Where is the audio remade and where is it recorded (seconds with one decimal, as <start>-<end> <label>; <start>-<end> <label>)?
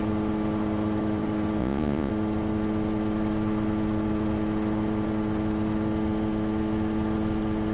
0.0-1.6 recorded; 1.6-2.1 remade; 2.1-7.7 recorded